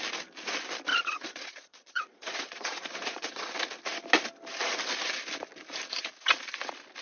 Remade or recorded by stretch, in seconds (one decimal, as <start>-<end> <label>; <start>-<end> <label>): 0.0-0.9 recorded; 0.9-3.5 remade; 3.5-7.0 recorded